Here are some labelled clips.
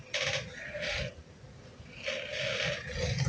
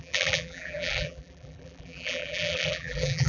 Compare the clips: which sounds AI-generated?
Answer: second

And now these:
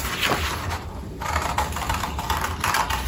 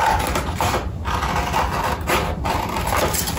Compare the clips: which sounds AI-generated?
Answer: first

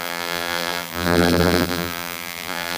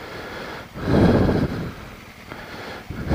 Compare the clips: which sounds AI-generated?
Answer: first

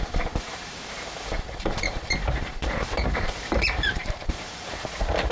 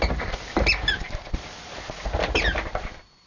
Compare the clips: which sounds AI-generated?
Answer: first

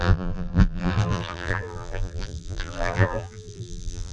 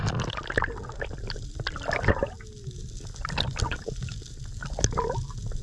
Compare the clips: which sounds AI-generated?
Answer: first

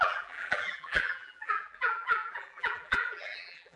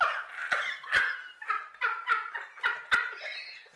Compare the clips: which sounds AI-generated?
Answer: first